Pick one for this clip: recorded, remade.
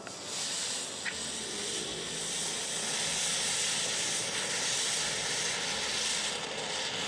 recorded